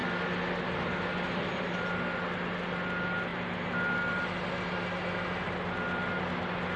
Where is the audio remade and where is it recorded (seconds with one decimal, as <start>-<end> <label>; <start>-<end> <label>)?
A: 0.0-6.8 recorded